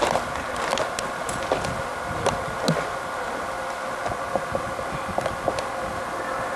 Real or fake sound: real